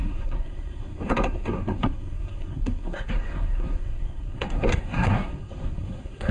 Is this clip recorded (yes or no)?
no